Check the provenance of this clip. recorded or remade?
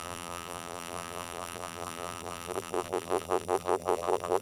remade